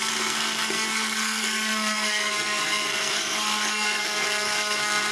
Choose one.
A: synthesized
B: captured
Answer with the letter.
A